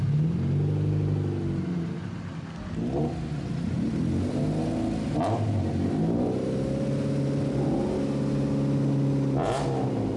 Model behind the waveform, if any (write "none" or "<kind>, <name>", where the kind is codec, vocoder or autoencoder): none